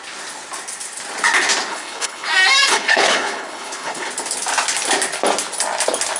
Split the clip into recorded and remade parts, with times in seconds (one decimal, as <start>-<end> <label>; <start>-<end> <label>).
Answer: 0.0-1.7 recorded; 1.7-2.3 remade; 2.3-2.7 recorded; 2.7-4.1 remade; 4.1-6.2 recorded